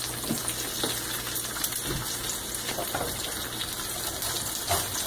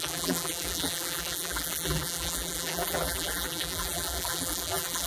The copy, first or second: second